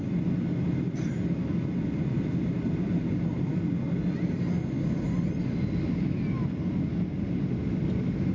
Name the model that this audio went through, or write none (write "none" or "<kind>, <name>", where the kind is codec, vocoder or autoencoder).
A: none